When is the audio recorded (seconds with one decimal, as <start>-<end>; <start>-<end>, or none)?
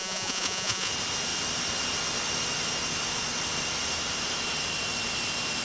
0.9-5.6